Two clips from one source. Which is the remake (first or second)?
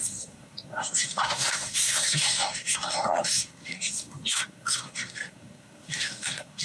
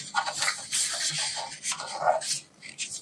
first